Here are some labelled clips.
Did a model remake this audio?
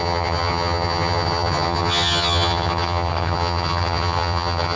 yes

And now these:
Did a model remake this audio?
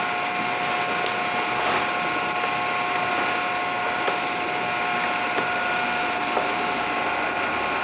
no